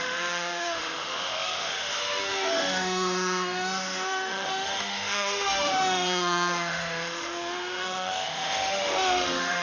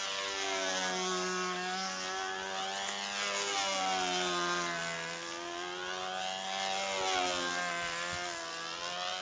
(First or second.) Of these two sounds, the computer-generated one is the first